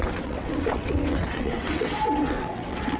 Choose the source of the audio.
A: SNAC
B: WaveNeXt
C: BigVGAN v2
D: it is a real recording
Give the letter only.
B